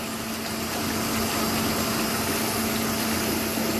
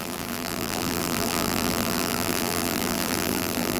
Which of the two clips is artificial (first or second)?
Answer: second